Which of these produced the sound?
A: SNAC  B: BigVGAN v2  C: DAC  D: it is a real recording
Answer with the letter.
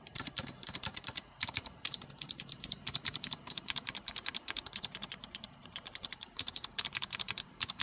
B